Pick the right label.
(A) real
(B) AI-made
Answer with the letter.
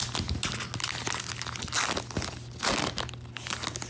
A